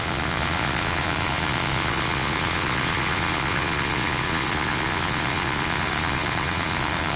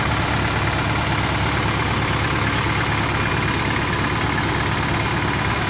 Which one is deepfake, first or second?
first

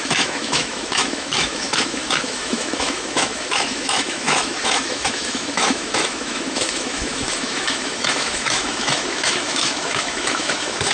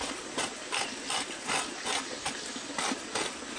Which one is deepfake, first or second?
first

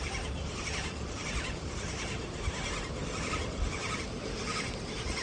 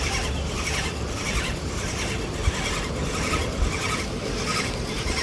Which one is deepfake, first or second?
first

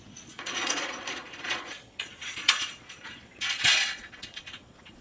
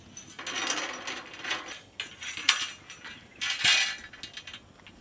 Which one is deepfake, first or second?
first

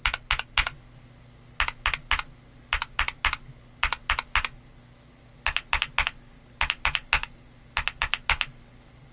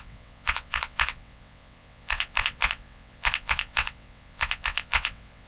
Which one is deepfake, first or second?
second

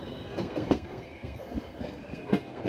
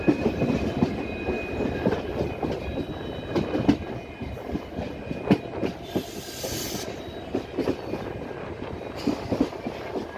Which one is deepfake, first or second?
first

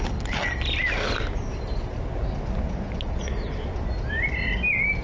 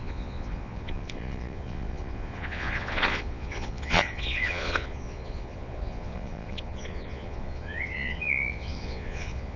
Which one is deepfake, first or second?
second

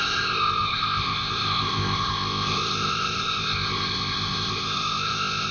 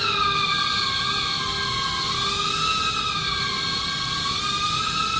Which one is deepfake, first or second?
first